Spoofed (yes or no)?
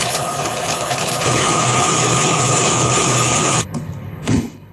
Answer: yes